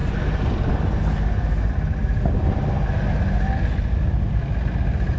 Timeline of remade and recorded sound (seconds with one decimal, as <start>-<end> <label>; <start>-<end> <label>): 0.0-5.2 recorded